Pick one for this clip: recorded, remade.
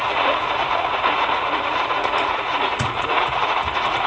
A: remade